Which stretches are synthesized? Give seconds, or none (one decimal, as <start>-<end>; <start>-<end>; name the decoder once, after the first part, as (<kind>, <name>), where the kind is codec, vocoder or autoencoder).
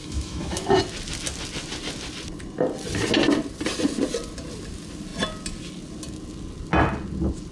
0.0-0.8 (autoencoder, DAC-VAE)